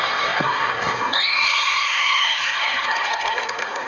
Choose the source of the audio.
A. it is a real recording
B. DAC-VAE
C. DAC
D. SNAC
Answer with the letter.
D